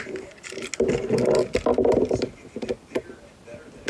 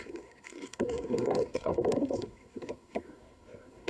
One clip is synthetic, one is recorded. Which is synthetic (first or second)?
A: second